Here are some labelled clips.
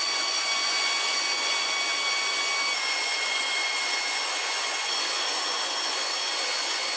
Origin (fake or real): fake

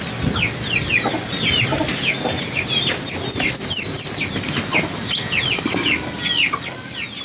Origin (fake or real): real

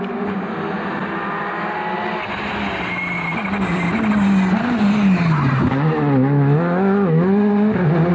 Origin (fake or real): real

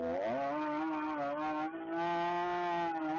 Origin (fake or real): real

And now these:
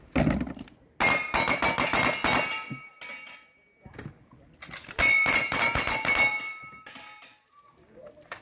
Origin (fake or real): real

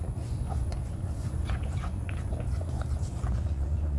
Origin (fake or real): fake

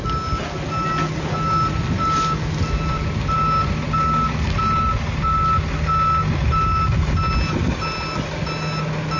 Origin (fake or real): real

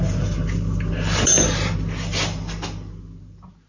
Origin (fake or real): real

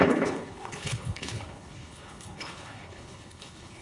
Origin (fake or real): fake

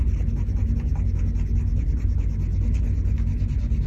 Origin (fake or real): real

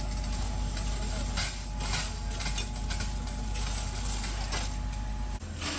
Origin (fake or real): real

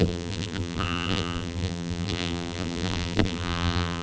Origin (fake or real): fake